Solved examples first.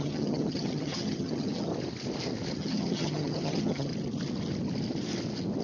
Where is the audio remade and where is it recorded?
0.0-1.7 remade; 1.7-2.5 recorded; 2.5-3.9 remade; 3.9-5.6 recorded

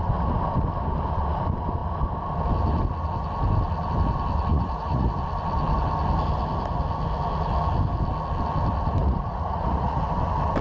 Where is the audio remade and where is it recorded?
0.0-4.5 recorded; 4.5-5.1 remade; 5.1-9.0 recorded; 9.0-10.0 remade; 10.0-10.6 recorded

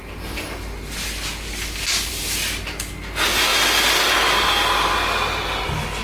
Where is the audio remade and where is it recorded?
0.0-6.0 recorded

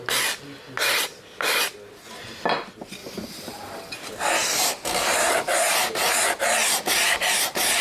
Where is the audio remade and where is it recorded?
0.0-3.0 recorded; 3.0-3.6 remade; 3.6-4.4 recorded; 4.4-6.1 remade; 6.1-6.6 recorded; 6.6-7.8 remade